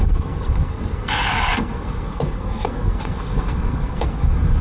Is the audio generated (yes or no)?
yes